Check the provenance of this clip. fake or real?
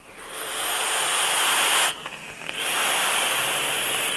real